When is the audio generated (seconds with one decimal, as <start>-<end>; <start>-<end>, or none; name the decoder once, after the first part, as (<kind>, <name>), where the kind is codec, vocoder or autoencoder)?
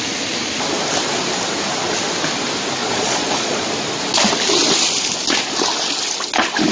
2.8-3.7 (vocoder, Vocos)